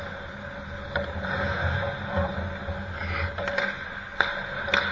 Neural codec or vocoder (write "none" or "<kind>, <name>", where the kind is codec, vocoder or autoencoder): none